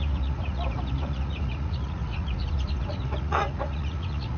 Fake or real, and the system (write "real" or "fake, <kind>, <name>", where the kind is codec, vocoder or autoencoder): fake, vocoder, Vocos